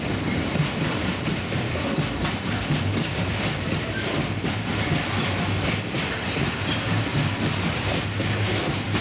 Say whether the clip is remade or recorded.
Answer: recorded